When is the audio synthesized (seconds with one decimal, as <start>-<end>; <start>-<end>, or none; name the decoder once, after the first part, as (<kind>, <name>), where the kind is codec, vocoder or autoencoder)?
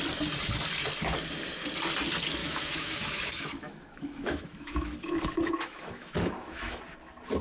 2.4-6.8 (autoencoder, DAC-VAE)